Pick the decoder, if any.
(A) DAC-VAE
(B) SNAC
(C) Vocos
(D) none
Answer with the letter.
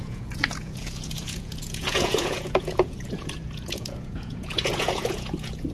C